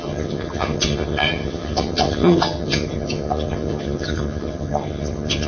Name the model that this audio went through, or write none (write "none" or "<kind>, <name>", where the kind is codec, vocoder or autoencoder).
vocoder, HiFi-GAN